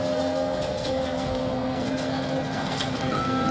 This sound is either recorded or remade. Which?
remade